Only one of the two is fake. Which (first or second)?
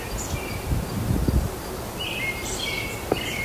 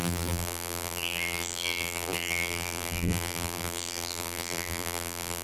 second